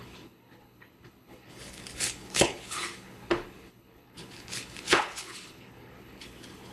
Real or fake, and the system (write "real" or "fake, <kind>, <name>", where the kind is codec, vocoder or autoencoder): fake, codec, HILCodec